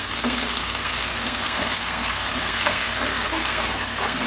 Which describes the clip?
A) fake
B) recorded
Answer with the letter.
A